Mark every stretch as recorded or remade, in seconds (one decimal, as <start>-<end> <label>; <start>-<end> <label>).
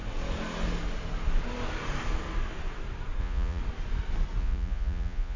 0.0-3.2 recorded; 3.2-3.6 remade; 3.6-4.4 recorded; 4.4-5.4 remade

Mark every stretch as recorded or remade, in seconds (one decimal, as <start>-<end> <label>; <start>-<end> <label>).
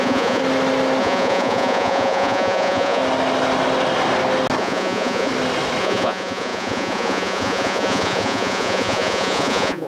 0.0-0.4 remade; 0.4-1.0 recorded; 1.0-3.0 remade; 3.0-4.6 recorded; 4.6-5.3 remade; 5.3-5.8 recorded; 5.8-9.9 remade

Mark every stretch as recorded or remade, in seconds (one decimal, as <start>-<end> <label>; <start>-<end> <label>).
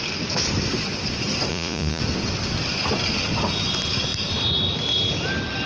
0.0-1.5 recorded; 1.5-2.0 remade; 2.0-5.7 recorded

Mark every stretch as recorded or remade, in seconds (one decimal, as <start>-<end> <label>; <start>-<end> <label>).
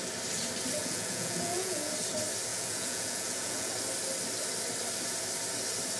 0.0-0.8 recorded; 0.8-1.9 remade; 1.9-2.5 recorded; 2.5-3.7 remade; 3.7-6.0 recorded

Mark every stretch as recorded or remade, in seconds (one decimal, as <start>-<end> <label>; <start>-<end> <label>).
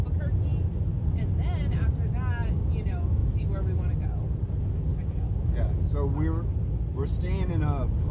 0.0-8.1 recorded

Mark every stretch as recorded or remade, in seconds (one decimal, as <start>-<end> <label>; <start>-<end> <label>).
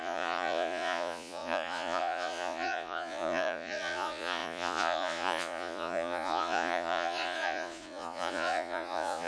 0.0-9.3 remade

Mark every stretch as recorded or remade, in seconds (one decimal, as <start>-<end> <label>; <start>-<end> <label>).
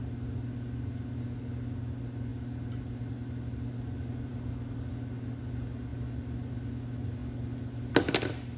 0.0-8.6 recorded